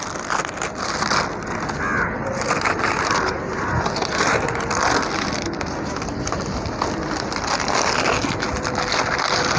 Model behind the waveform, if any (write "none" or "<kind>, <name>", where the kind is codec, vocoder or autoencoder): none